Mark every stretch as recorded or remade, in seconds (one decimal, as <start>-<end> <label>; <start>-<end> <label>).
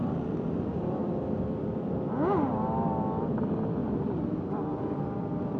0.0-5.6 recorded